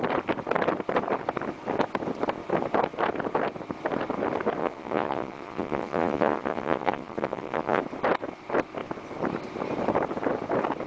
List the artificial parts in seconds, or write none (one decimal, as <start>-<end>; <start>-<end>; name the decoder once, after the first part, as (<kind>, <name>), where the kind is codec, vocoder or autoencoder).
4.6-7.8 (vocoder, Vocos)